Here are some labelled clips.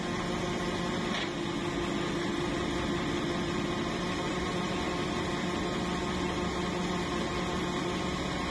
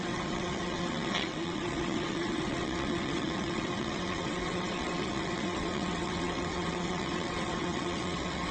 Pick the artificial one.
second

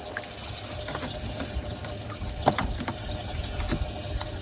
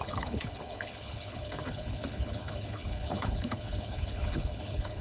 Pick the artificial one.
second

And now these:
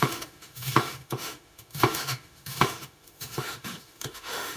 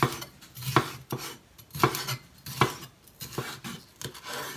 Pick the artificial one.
first